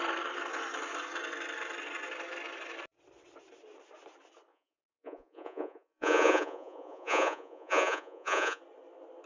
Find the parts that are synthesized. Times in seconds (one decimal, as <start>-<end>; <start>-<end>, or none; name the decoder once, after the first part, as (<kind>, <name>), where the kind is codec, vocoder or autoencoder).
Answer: 4.5-8.6 (vocoder, Vocos)